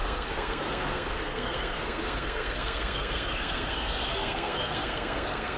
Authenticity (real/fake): fake